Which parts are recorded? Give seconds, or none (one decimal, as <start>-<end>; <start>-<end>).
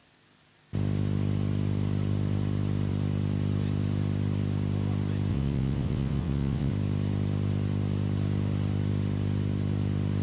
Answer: 0.0-5.3; 6.7-10.2